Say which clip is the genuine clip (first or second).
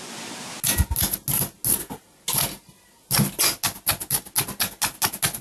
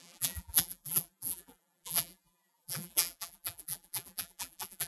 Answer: first